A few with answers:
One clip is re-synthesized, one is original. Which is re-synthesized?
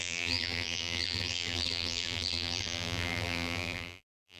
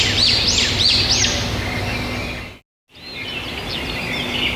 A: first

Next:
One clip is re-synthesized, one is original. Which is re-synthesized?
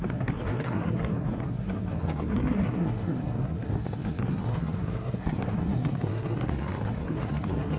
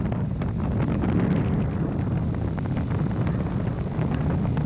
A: first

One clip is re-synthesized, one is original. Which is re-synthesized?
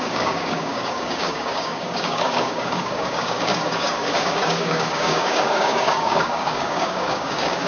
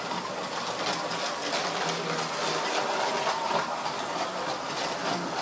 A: first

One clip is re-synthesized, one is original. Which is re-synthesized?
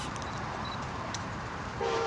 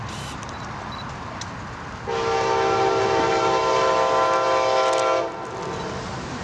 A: first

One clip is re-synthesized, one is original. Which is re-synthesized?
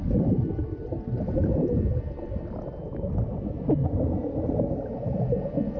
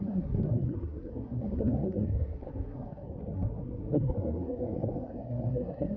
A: second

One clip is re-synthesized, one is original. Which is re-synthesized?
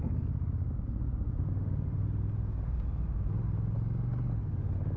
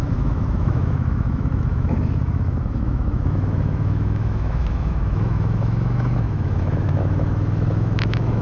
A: second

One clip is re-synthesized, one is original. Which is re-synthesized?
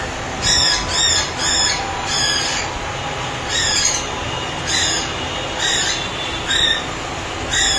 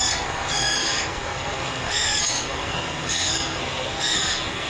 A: second